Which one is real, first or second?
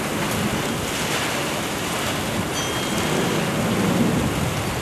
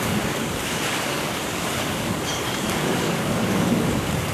first